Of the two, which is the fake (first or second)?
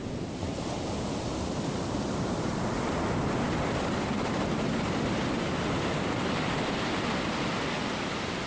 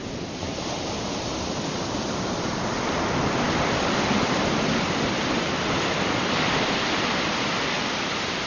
second